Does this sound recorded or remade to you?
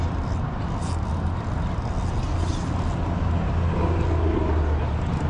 recorded